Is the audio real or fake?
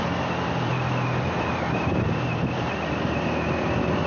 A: real